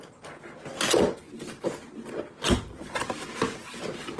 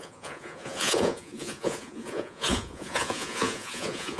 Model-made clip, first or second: second